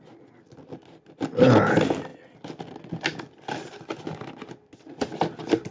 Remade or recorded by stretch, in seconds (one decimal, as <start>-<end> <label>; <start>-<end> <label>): 0.0-5.7 recorded